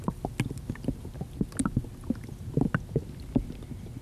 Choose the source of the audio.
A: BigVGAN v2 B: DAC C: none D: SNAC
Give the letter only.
C